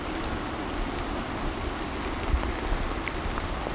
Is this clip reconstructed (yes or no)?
no